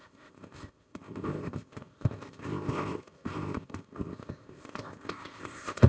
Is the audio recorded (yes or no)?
no